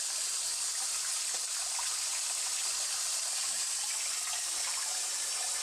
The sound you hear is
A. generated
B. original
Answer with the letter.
B